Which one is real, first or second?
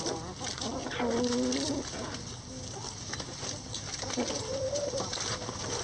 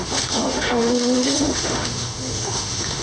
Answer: first